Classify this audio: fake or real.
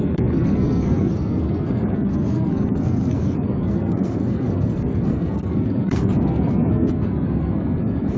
fake